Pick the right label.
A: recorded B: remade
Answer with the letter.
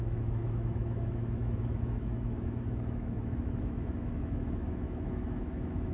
B